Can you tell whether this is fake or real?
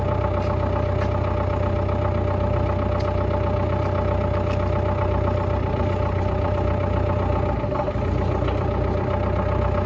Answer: real